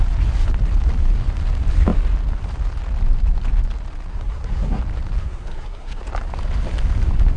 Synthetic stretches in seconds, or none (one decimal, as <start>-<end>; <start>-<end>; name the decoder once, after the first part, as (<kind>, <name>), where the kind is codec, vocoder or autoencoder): 4.1-4.8 (codec, SNAC); 5.2-6.0